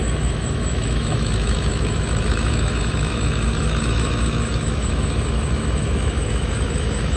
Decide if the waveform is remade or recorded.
remade